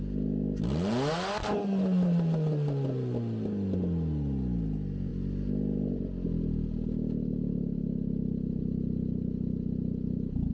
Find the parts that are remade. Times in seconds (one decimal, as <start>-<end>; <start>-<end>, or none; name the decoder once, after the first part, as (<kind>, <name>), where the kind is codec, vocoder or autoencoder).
none